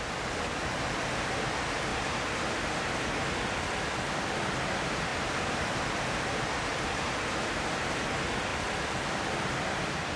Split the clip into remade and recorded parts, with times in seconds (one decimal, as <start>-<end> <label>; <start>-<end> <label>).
0.0-1.9 recorded; 1.9-2.7 remade; 2.7-5.1 recorded; 5.1-8.1 remade; 8.1-8.5 recorded; 8.5-10.2 remade